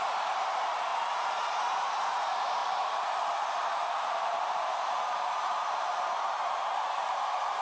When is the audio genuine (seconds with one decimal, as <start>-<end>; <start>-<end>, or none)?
0.0-0.9; 1.6-2.6; 6.2-7.6